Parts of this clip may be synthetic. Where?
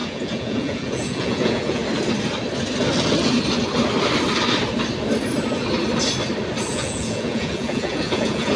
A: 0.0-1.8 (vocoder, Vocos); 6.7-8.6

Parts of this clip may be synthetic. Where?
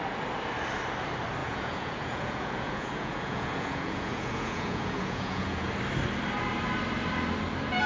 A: 1.4-5.7 (vocoder, Vocos)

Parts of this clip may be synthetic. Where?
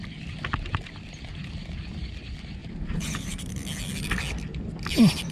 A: 2.6-3.5 (vocoder, BigVGAN v2)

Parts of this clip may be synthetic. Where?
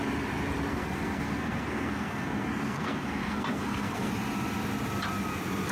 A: 0.7-4.1 (codec, SNAC)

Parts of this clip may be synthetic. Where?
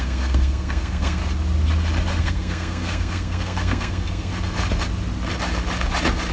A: 0.0-1.2 (codec, SNAC); 2.2-4.3